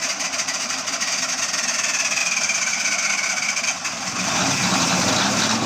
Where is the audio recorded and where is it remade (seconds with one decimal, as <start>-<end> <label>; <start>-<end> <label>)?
0.0-5.7 recorded